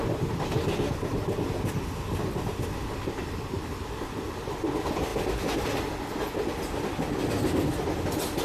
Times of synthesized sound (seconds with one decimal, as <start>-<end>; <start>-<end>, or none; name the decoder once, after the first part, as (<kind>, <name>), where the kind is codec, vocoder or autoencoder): none